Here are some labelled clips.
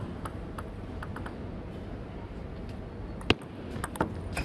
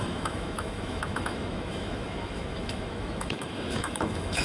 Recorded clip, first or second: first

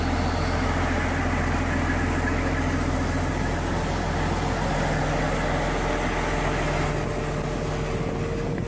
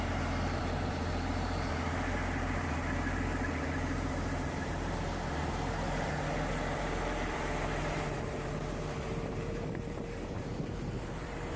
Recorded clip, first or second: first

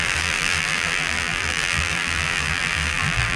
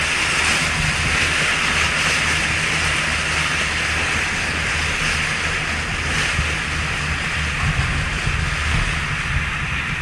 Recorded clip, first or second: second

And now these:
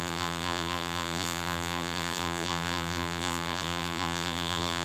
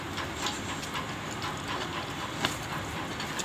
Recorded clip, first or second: second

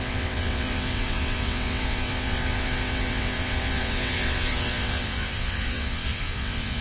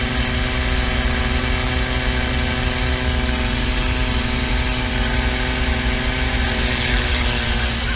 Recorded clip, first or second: second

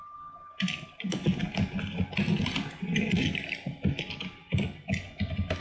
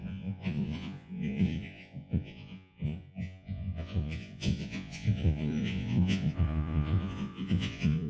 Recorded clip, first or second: first